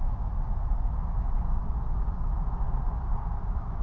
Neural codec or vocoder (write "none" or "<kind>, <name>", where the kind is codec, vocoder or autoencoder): autoencoder, DAC-VAE